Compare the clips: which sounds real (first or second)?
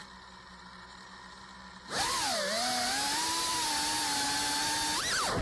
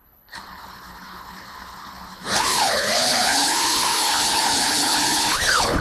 first